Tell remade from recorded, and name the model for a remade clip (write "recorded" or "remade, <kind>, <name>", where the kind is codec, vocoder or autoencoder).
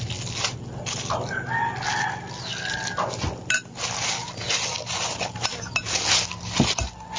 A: recorded